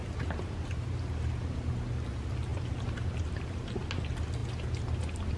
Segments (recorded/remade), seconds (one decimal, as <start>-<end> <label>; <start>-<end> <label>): 0.0-5.4 recorded